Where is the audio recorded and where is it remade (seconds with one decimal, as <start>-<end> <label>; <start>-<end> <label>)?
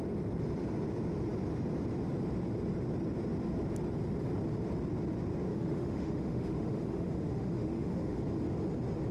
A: 0.0-5.5 recorded; 5.5-8.2 remade; 8.2-9.1 recorded